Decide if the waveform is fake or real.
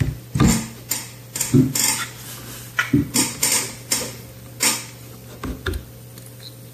real